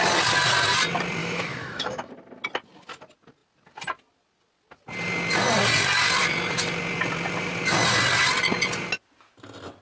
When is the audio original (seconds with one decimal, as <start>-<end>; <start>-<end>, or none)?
0.0-1.2; 2.1-9.8